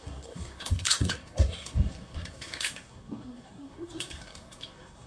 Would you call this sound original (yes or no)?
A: no